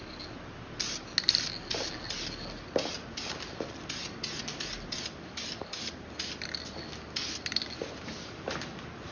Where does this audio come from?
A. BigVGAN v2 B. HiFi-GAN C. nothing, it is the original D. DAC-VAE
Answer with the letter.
C